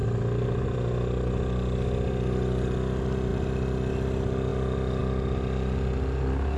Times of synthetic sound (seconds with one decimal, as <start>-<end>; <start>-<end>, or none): none